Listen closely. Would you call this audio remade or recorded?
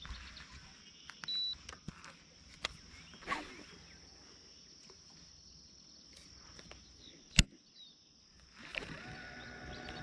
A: recorded